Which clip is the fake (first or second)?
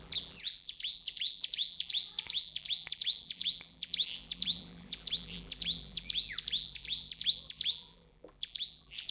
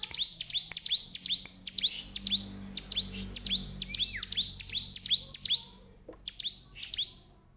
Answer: first